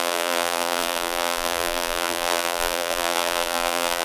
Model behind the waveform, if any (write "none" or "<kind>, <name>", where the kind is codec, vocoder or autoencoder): vocoder, BigVGAN v2